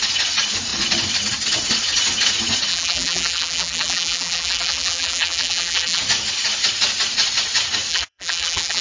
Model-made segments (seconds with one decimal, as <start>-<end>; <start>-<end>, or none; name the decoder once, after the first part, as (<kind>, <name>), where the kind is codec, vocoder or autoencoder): 2.7-6.0 (vocoder, BigVGAN v2); 7.9-8.8